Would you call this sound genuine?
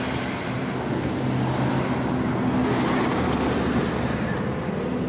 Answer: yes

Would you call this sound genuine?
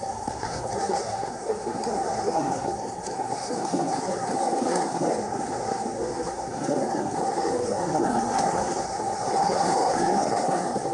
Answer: no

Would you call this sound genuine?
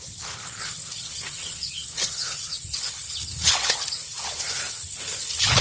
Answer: no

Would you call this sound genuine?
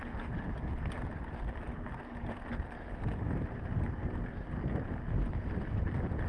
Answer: yes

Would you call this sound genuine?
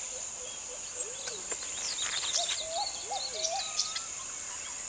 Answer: yes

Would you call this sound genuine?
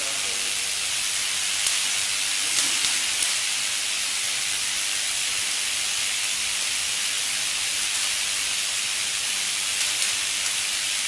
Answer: yes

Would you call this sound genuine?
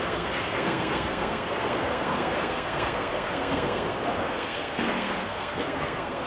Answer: no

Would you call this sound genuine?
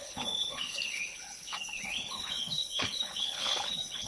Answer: no